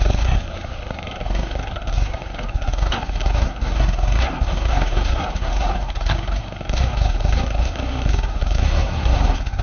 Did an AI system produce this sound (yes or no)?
yes